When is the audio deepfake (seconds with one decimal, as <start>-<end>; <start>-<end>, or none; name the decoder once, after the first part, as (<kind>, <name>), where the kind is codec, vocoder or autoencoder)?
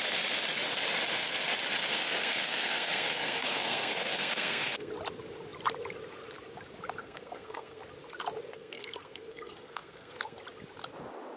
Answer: 1.9-4.9 (codec, SNAC); 7.0-7.8; 8.5-10.4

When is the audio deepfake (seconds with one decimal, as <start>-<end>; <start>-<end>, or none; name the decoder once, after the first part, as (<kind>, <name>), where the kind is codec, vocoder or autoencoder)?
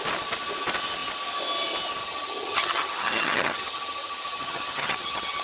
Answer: 2.0-5.4 (vocoder, HiFi-GAN)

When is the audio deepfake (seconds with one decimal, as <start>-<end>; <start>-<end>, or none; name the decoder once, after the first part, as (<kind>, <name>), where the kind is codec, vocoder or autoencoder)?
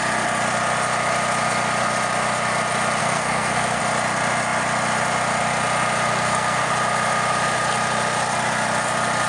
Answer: 3.0-3.8 (codec, SNAC); 6.1-6.7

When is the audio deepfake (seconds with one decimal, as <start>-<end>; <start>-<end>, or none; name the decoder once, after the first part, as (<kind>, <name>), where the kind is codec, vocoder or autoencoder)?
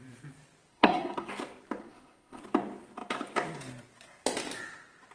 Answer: 0.7-1.3 (codec, SNAC); 1.8-2.4